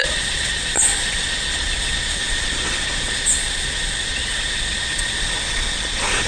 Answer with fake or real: fake